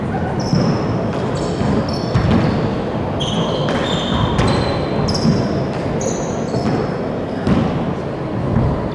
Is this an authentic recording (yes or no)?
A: yes